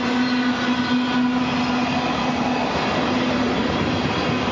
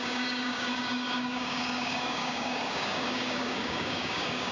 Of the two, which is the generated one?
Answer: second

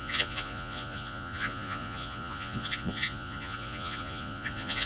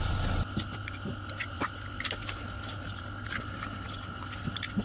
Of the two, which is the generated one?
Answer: first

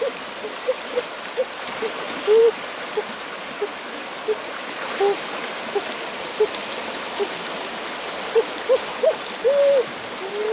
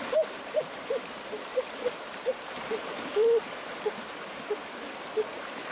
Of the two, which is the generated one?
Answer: second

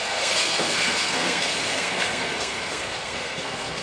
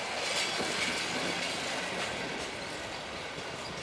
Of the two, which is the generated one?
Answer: first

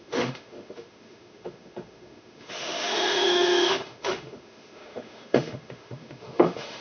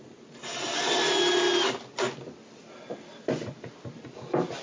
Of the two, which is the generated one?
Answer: first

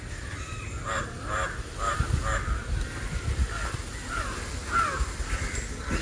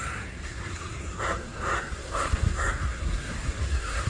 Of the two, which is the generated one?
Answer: second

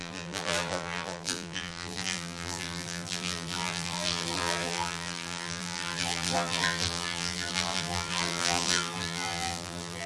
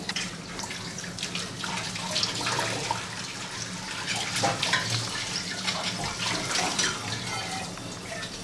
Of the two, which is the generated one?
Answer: first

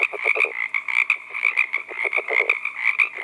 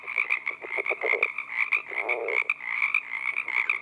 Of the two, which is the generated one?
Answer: second